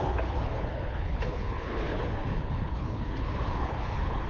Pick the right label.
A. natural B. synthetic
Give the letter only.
B